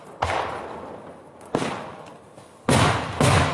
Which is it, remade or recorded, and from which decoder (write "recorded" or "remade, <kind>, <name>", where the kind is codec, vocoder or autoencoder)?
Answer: recorded